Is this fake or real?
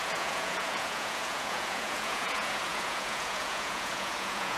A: fake